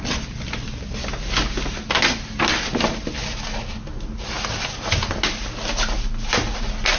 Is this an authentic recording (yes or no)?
yes